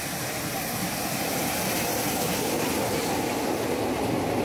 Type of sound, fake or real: real